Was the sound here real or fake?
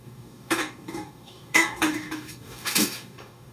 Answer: fake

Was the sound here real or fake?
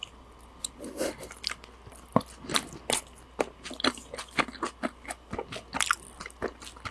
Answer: real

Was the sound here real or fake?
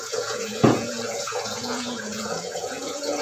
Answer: fake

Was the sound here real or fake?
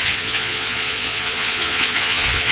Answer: fake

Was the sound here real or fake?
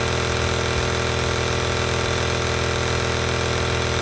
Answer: real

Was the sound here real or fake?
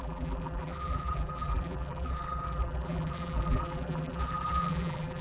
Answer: fake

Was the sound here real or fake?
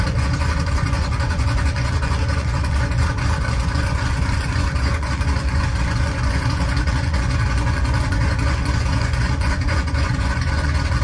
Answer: fake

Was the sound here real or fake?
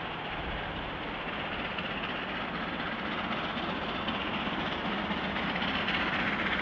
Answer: real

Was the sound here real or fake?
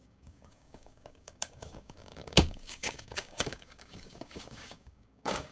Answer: fake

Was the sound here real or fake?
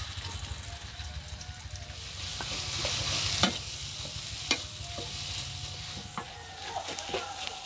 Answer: real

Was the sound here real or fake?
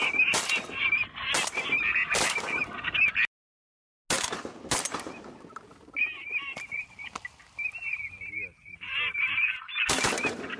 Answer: real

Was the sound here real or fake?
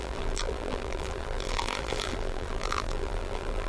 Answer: fake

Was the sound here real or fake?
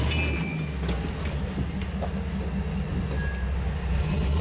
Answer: real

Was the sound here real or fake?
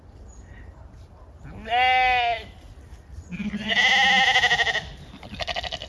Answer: real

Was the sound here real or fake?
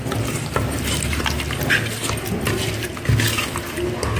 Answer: real